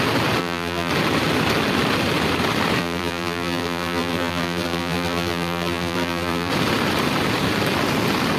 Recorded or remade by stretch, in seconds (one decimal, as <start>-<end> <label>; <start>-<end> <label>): 0.0-0.4 recorded; 0.4-0.9 remade; 0.9-2.8 recorded; 2.8-6.5 remade; 6.5-8.4 recorded